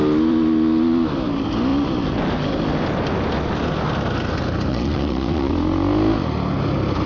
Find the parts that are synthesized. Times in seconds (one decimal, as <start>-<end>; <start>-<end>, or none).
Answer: 4.7-5.5